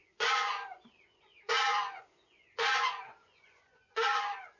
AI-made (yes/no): yes